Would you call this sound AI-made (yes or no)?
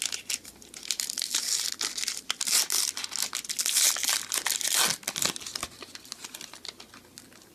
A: no